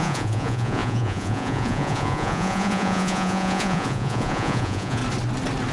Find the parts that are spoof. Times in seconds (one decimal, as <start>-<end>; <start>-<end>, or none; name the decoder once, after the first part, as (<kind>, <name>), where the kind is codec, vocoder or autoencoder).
0.0-5.0 (vocoder, Vocos)